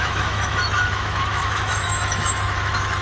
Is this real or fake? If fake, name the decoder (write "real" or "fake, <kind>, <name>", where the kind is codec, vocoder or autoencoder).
fake, autoencoder, DAC-VAE